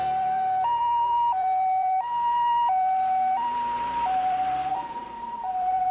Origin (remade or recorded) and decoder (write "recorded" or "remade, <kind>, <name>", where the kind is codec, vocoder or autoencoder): remade, vocoder, BigVGAN v2